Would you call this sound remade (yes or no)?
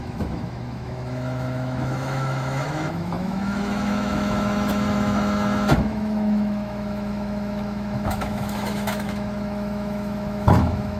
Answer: yes